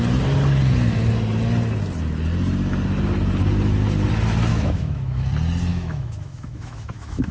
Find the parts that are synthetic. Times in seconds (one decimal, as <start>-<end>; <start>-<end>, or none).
4.5-5.3; 5.7-7.3